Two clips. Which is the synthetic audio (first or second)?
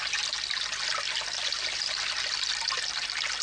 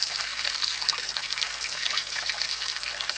second